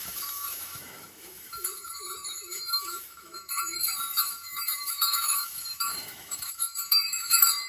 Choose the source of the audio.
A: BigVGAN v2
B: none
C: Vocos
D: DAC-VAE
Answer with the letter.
D